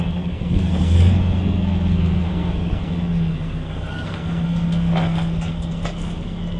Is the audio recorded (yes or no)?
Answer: no